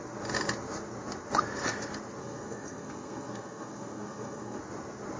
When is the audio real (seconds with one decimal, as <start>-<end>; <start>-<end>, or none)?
0.0-2.2; 4.6-5.2